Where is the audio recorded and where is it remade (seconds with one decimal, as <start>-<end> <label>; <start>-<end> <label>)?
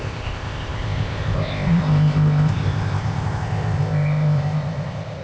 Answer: 0.0-5.2 remade